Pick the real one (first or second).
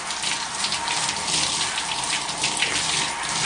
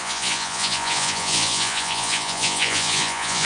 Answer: first